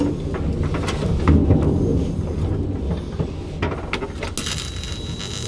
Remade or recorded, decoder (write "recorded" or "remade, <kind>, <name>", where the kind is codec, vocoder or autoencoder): recorded